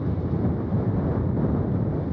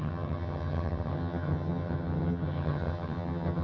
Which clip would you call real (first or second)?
first